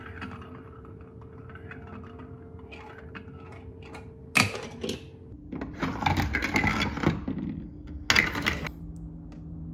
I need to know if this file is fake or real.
real